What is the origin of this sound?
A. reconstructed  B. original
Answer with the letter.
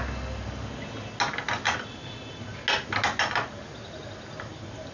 B